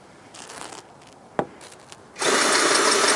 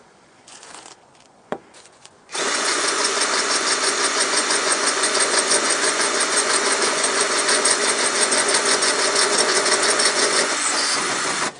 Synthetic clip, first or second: second